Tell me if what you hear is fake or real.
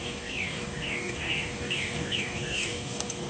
fake